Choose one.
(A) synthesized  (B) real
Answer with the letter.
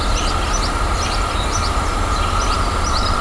B